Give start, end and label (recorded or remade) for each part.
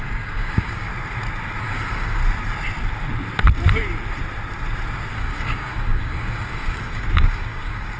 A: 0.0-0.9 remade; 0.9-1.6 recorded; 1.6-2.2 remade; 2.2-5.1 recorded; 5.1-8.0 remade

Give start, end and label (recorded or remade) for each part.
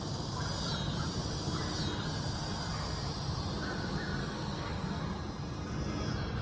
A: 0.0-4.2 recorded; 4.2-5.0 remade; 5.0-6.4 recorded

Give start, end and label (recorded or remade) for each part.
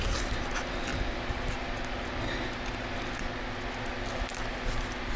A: 0.0-5.2 recorded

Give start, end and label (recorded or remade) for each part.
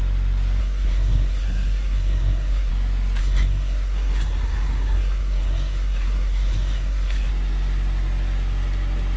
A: 0.0-0.6 recorded; 0.6-2.7 remade; 2.7-3.2 recorded; 3.2-7.3 remade; 7.3-9.2 recorded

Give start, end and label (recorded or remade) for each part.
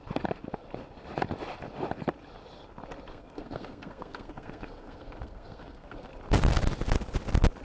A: 0.0-3.1 recorded; 3.1-6.1 remade; 6.1-7.6 recorded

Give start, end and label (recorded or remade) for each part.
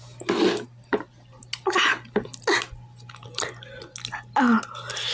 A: 0.0-5.1 recorded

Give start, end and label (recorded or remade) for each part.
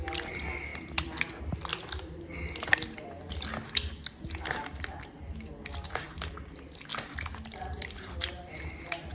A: 0.0-9.1 recorded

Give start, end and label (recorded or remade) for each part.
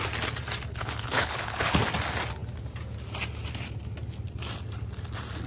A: 0.0-0.7 recorded; 0.7-1.8 remade; 1.8-5.5 recorded